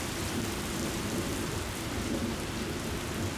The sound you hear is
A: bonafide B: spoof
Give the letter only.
A